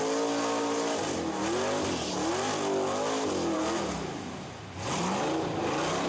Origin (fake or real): real